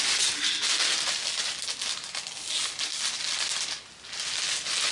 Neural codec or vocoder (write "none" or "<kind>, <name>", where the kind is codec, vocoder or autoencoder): none